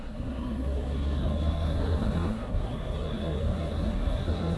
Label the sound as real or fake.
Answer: fake